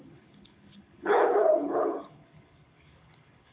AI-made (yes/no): yes